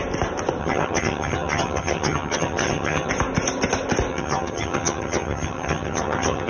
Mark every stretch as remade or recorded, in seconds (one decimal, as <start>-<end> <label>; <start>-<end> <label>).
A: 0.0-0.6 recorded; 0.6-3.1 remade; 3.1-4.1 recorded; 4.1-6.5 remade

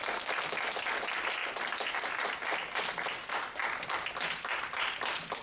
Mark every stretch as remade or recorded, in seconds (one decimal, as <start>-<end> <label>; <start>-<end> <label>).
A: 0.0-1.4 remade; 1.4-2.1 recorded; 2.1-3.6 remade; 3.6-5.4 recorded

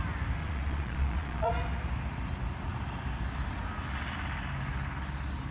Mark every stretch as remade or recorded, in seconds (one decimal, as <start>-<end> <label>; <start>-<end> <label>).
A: 0.0-0.4 recorded; 0.4-1.5 remade; 1.5-5.5 recorded

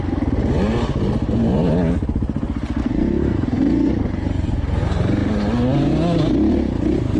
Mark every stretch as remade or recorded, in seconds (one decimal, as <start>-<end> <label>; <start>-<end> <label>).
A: 0.0-2.8 recorded; 2.8-3.9 remade; 3.9-7.2 recorded

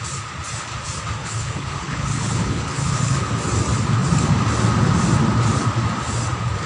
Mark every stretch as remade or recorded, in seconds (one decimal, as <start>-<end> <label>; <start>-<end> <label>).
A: 0.0-1.2 recorded; 1.2-3.3 remade; 3.3-6.7 recorded

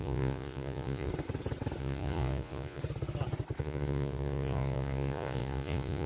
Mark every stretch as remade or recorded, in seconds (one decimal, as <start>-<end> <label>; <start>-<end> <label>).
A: 0.0-1.1 remade; 1.1-1.8 recorded; 1.8-2.8 remade; 2.8-3.6 recorded; 3.6-6.1 remade

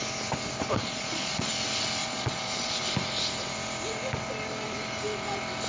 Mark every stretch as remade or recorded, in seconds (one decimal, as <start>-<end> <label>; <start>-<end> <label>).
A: 0.0-0.8 recorded; 0.8-1.5 remade; 1.5-2.0 recorded; 2.0-2.8 remade; 2.8-5.7 recorded

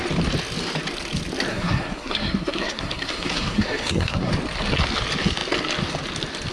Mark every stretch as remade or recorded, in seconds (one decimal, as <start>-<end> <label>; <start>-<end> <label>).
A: 0.0-1.5 recorded; 1.5-4.3 remade; 4.3-6.5 recorded